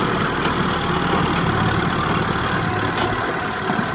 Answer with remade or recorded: recorded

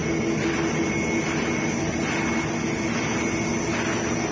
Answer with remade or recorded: recorded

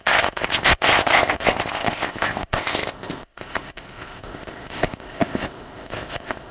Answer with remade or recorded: remade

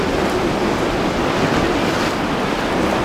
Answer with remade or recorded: recorded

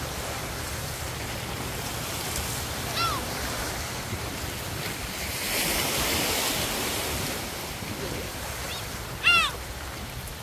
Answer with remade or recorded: remade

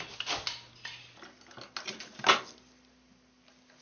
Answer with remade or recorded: recorded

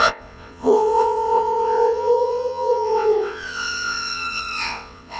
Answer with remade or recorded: remade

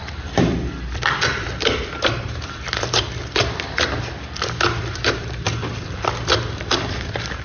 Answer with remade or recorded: remade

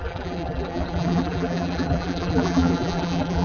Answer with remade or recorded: remade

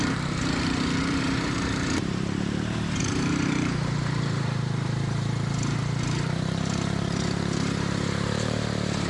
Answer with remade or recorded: remade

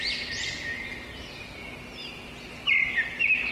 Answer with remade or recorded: recorded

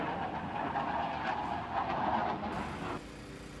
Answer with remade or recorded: recorded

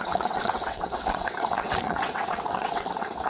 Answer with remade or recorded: remade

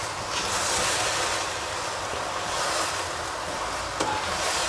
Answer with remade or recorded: recorded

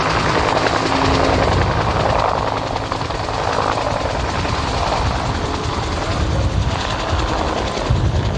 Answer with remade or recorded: recorded